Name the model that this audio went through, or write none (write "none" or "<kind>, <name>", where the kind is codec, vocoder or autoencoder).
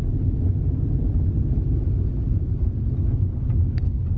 none